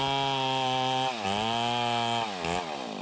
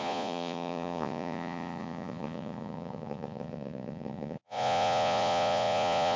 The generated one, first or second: second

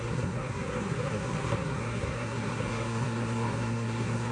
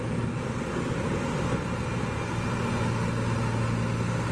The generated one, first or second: first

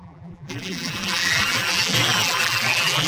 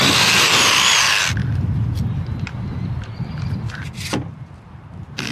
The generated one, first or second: first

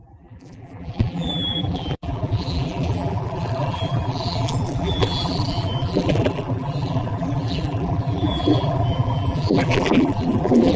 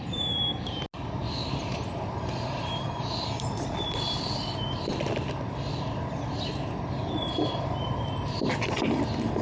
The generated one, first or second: first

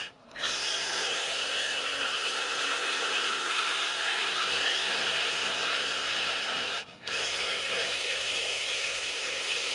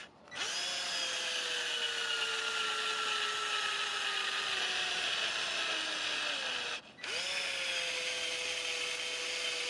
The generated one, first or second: first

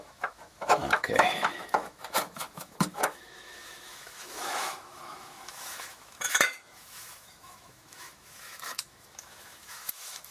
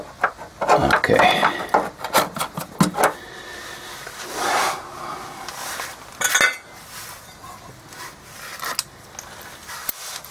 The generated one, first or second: first